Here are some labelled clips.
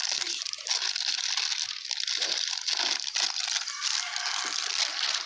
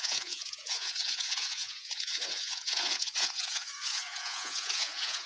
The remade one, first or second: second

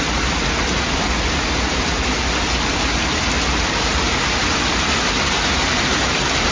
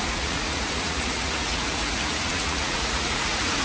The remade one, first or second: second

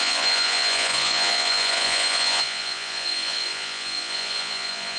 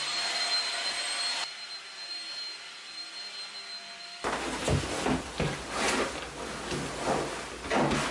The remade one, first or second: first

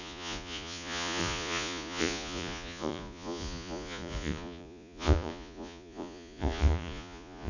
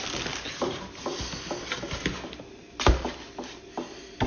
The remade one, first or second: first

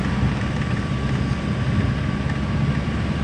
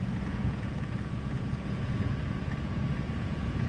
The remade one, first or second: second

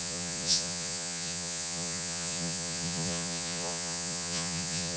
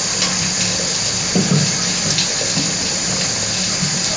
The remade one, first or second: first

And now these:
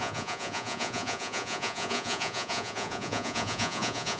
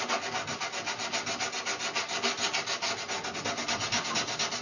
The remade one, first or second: first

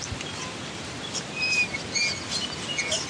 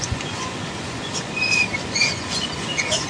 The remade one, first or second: second